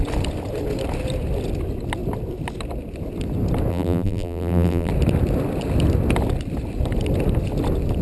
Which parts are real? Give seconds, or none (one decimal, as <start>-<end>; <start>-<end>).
0.0-3.7; 4.9-8.0